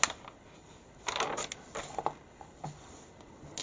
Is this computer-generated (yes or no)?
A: no